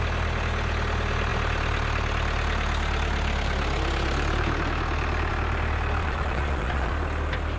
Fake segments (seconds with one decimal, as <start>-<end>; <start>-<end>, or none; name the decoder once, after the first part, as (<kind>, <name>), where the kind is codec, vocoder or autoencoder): 6.0-6.9 (vocoder, Vocos)